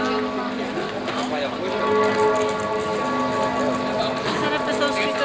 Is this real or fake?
real